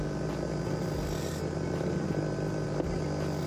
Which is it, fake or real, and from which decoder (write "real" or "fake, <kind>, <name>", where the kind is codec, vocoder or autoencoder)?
real